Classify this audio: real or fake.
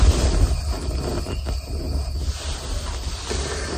real